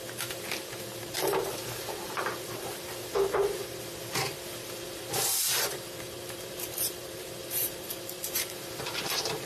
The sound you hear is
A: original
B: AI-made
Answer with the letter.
B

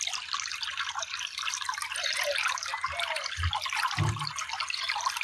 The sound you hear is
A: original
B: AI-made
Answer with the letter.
A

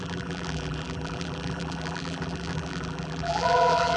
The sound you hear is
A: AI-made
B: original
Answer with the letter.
A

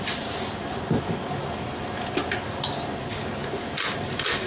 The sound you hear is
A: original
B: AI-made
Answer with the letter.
A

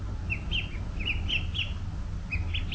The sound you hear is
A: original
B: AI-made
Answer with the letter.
A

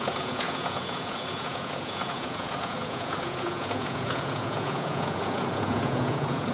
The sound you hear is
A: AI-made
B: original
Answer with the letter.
A